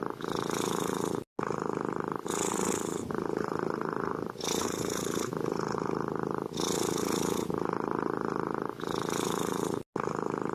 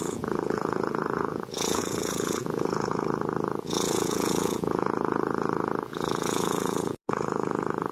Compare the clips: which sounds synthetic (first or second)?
second